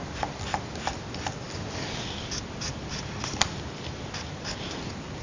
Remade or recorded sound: recorded